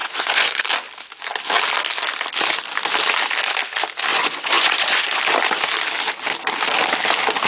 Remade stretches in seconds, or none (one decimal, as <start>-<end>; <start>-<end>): 0.0-0.6; 4.1-5.2